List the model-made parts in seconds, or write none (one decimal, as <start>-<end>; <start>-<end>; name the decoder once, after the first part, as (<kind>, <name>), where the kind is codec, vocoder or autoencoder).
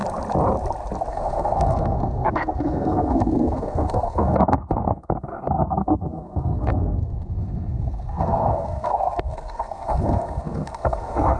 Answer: 1.1-11.4 (codec, SNAC)